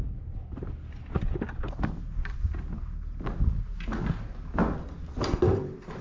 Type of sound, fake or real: real